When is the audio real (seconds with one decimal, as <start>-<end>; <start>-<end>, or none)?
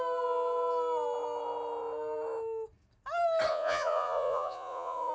0.0-3.5